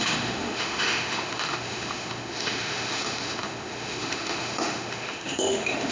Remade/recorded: remade